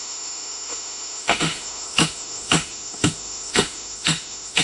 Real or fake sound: fake